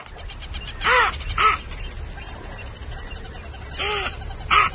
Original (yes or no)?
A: yes